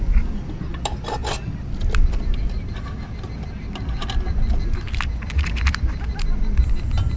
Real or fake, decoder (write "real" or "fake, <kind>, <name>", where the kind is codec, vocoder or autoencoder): real